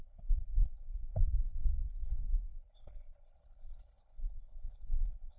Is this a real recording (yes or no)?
no